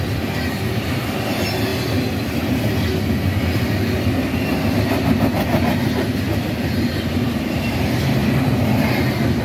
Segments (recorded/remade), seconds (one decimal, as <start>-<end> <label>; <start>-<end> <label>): 0.0-1.7 remade; 1.7-4.7 recorded; 4.7-9.4 remade